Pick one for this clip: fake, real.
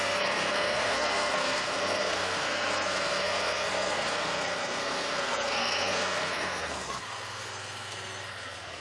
fake